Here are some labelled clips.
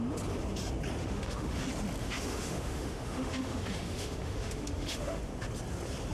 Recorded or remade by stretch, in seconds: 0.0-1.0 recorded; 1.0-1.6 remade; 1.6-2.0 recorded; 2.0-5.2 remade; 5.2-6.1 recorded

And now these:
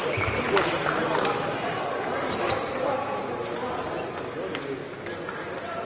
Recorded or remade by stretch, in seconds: 0.0-3.5 remade; 3.5-5.8 recorded

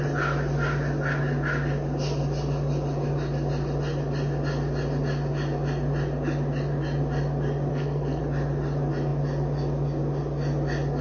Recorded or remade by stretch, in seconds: 0.0-7.7 recorded; 7.7-8.2 remade; 8.2-11.0 recorded

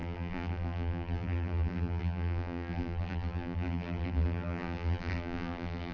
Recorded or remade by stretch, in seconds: 0.0-5.9 remade

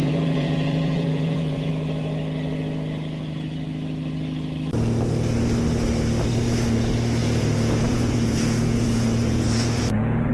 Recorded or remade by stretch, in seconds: 0.0-1.7 remade; 1.7-7.2 recorded; 7.2-10.3 remade

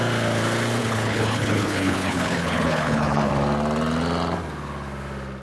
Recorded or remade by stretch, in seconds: 0.0-0.8 recorded; 0.8-3.3 remade; 3.3-5.4 recorded

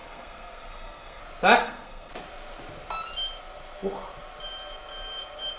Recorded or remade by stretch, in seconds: 0.0-1.2 remade; 1.2-1.6 recorded; 1.6-2.1 remade; 2.1-5.6 recorded

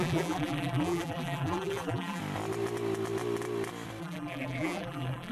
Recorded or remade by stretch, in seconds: 0.0-2.2 remade; 2.2-4.0 recorded; 4.0-5.3 remade